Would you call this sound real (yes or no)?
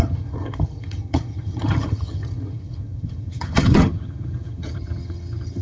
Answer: no